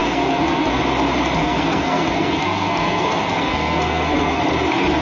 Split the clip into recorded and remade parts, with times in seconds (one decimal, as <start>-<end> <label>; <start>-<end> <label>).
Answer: 0.0-0.8 remade; 0.8-1.4 recorded; 1.4-4.4 remade; 4.4-5.0 recorded